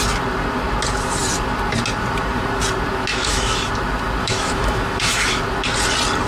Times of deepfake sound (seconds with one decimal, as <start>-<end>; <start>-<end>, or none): 3.1-3.7; 4.2-5.4